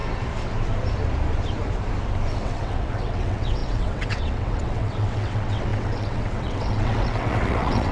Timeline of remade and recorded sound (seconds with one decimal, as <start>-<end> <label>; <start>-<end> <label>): 0.0-2.3 recorded; 2.3-7.9 remade